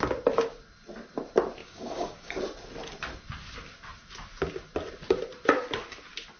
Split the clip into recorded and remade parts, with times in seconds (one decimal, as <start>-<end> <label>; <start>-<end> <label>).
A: 0.0-1.6 recorded; 1.6-2.4 remade; 2.4-6.4 recorded